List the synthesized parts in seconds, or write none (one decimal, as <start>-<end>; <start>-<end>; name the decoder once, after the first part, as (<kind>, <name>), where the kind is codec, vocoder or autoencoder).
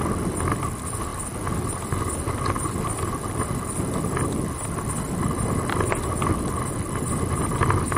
none